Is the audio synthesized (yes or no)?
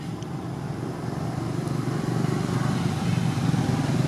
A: no